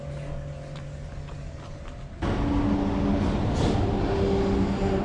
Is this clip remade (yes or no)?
no